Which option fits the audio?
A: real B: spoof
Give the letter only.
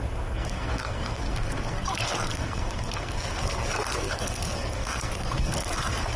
B